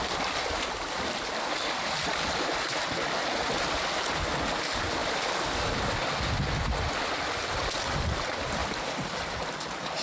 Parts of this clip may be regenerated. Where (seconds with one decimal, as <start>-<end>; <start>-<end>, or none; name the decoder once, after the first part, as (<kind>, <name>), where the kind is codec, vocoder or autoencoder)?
8.6-9.5 (vocoder, BigVGAN v2)